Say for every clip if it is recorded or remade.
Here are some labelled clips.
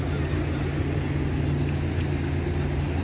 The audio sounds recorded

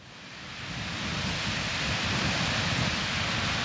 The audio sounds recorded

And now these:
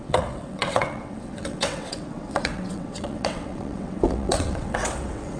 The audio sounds remade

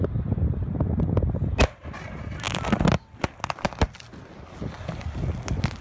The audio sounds recorded